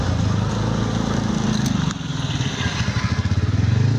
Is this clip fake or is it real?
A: real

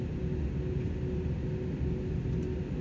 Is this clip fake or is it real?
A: real